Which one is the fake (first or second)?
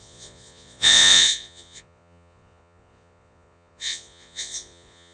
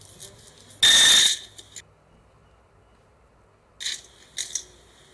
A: first